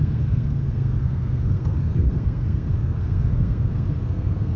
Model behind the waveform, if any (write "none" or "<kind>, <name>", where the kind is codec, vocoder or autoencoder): codec, SNAC